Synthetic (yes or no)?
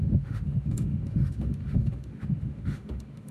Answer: yes